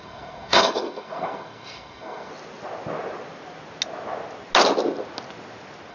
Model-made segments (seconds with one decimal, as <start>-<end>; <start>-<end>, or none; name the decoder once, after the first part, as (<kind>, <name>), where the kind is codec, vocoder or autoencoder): 0.0-2.3 (codec, SNAC)